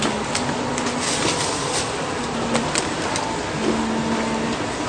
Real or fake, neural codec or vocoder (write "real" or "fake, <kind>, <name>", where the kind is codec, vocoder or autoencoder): real